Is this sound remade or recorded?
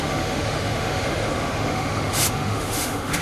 remade